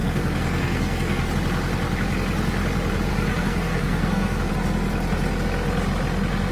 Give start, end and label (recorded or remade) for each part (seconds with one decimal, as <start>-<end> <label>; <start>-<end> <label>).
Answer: 0.0-1.3 remade; 1.3-3.1 recorded; 3.1-4.5 remade; 4.5-6.5 recorded

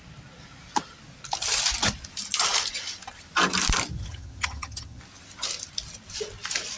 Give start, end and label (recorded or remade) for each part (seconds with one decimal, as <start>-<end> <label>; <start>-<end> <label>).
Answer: 0.0-3.9 recorded; 3.9-5.0 remade; 5.0-6.8 recorded

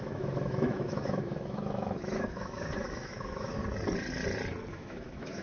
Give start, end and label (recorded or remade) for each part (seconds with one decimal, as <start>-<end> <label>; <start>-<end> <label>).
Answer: 0.0-3.6 remade; 3.6-4.7 recorded; 4.7-5.4 remade

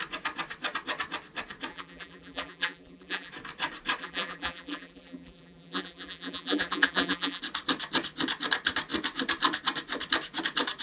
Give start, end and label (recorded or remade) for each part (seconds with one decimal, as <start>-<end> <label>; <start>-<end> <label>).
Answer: 0.0-1.7 recorded; 1.7-3.3 remade; 3.3-4.0 recorded; 4.0-7.4 remade; 7.4-10.8 recorded

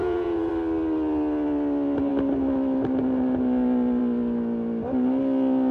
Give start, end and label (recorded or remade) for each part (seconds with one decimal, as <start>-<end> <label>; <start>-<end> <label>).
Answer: 0.0-0.5 remade; 0.5-5.7 recorded